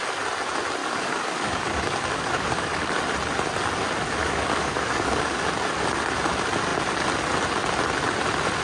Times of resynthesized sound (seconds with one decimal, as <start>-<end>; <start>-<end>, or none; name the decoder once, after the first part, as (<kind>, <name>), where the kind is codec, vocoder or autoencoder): 0.8-3.0 (codec, DAC); 4.2-5.5